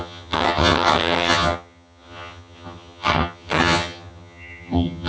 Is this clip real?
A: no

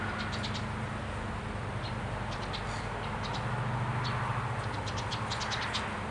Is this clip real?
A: yes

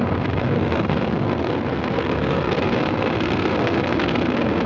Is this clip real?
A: no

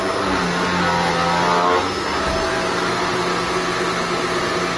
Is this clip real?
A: yes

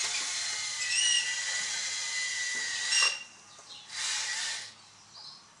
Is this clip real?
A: yes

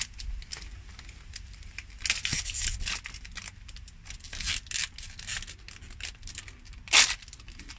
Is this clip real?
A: yes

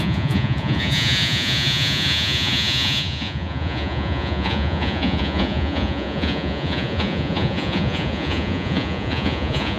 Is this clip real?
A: no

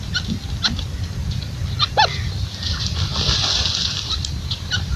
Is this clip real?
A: yes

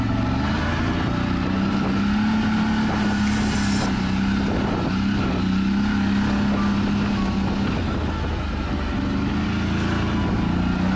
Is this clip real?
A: yes